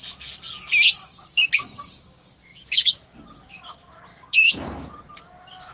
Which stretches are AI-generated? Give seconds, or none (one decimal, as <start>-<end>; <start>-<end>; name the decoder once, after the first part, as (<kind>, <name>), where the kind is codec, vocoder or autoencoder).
1.1-3.5 (codec, DAC); 4.1-4.9